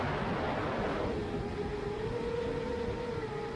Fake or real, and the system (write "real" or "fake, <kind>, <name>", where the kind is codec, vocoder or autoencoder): real